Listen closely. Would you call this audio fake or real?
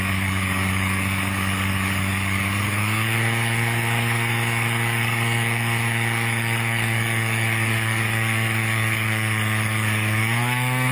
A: fake